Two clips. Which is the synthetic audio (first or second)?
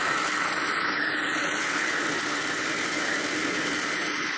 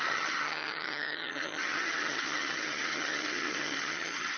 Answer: second